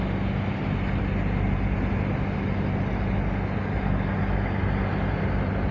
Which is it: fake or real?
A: real